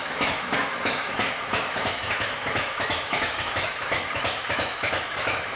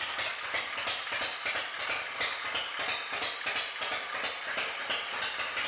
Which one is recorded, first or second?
second